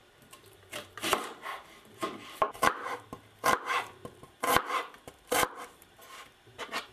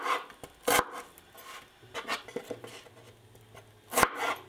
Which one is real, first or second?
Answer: second